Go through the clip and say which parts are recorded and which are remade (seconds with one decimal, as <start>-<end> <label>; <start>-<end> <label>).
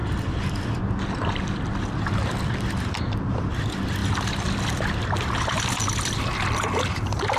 0.0-7.4 recorded